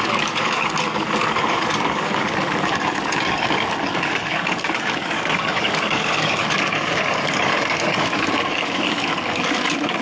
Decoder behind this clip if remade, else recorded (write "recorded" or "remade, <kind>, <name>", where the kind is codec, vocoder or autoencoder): remade, codec, DAC